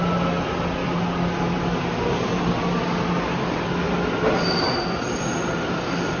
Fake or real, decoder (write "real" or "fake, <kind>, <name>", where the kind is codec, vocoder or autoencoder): real